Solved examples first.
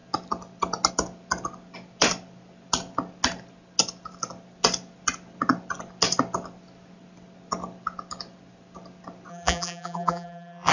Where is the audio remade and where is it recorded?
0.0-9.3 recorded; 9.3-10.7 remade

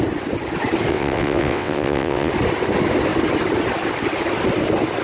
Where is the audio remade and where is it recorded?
0.0-0.9 recorded; 0.9-2.3 remade; 2.3-5.0 recorded

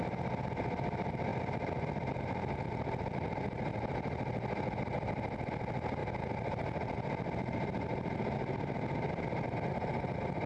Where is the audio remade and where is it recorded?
0.0-1.3 recorded; 1.3-5.5 remade; 5.5-10.5 recorded

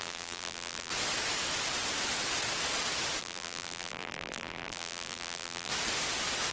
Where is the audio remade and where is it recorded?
0.0-0.9 remade; 0.9-3.2 recorded; 3.2-5.7 remade; 5.7-6.5 recorded

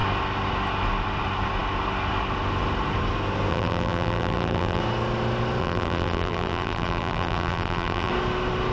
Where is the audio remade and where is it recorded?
0.0-3.5 recorded; 3.5-4.8 remade; 4.8-5.6 recorded; 5.6-8.1 remade; 8.1-8.7 recorded